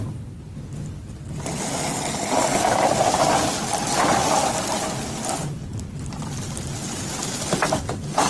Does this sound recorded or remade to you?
recorded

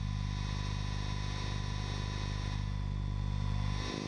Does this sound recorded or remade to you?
remade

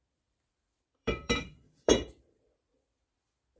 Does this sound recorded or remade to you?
remade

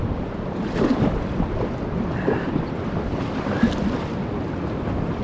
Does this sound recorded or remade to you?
remade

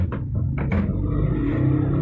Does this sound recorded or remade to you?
recorded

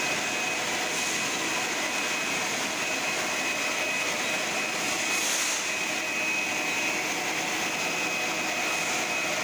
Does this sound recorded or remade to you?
recorded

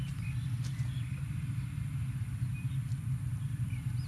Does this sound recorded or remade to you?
recorded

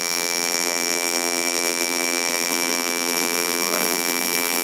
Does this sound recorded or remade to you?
remade